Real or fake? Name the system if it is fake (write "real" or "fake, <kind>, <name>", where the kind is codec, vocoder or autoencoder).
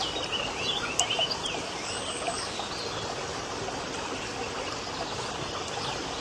real